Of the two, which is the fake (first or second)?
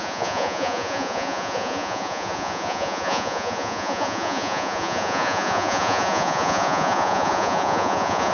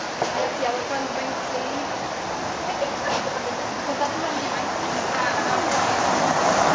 first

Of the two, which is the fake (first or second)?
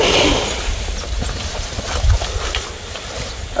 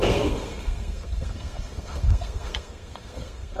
second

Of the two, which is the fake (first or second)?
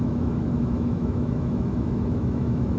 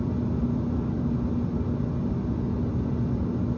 first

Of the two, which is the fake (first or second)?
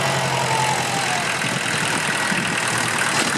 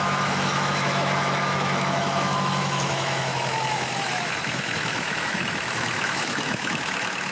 second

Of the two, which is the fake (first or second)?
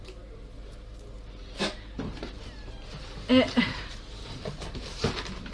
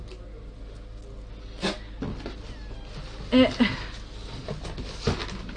first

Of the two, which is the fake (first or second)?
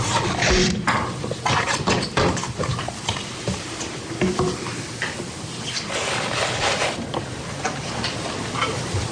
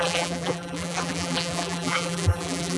second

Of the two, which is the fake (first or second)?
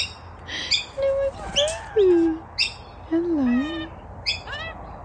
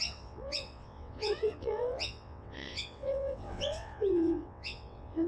second